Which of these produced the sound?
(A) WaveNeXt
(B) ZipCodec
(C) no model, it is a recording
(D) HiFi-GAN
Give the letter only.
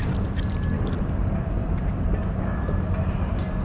C